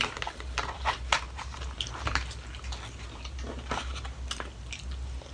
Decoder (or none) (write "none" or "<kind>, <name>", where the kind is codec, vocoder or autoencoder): none